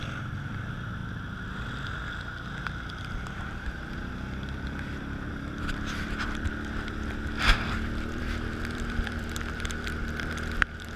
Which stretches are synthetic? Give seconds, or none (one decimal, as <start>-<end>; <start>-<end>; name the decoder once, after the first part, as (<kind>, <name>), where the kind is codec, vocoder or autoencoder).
0.0-1.0 (vocoder, BigVGAN v2); 3.2-11.0